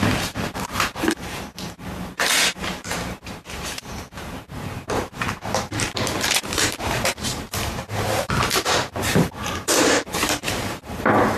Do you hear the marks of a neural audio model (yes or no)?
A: yes